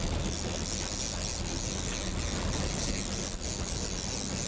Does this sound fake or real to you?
real